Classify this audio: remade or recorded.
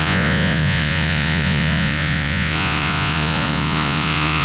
remade